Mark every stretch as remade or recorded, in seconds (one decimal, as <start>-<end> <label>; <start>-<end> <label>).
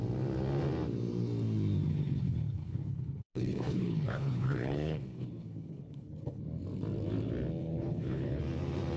0.0-1.9 recorded; 1.9-6.4 remade; 6.4-7.6 recorded; 7.6-8.4 remade; 8.4-9.0 recorded